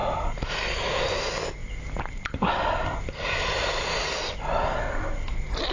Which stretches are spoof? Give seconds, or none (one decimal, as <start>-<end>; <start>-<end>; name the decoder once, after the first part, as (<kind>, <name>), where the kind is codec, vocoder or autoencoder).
0.0-0.5 (vocoder, BigVGAN v2); 1.6-4.2